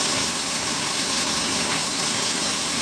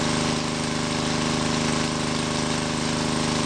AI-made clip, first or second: first